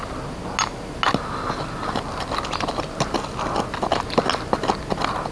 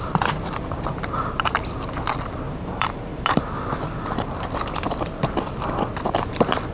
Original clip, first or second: first